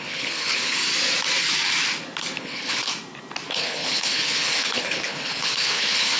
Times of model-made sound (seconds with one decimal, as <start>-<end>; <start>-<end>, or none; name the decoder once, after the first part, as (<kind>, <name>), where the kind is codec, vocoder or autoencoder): 0.0-0.8 (codec, HILCodec); 2.4-2.9; 3.5-6.2